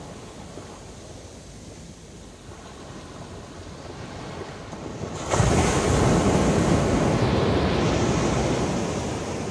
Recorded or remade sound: recorded